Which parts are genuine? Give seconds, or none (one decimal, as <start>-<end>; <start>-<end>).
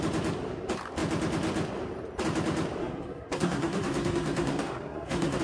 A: 0.0-2.8